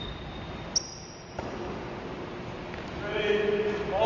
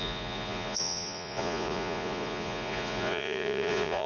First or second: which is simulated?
second